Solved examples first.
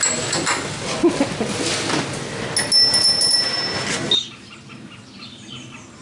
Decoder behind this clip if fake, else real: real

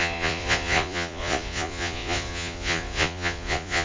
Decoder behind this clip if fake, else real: fake, vocoder, Vocos